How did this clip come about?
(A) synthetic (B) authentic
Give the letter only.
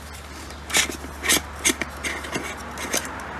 B